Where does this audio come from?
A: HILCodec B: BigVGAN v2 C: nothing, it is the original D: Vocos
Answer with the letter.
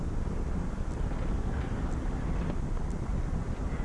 C